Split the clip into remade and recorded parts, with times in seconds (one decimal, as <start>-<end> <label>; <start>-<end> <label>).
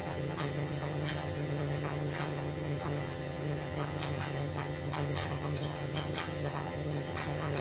0.0-7.6 remade